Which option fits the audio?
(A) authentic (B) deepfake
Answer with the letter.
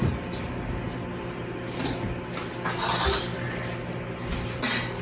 A